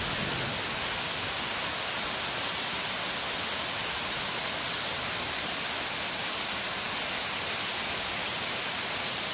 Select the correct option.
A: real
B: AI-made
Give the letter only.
A